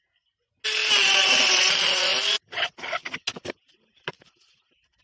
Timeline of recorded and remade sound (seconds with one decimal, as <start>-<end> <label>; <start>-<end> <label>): 0.0-0.8 recorded; 0.8-1.4 remade; 1.4-5.0 recorded